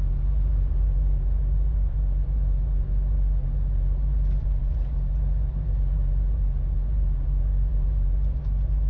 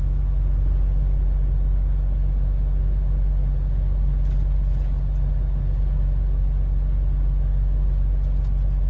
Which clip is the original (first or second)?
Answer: second